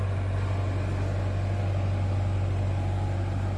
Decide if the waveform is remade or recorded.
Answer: recorded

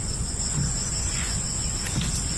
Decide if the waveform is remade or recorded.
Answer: remade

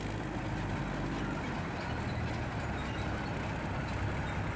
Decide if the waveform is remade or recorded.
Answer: recorded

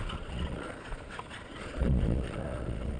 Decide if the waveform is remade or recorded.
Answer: remade